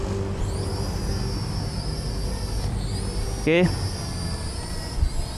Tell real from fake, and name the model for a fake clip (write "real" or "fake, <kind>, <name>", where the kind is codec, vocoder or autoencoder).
real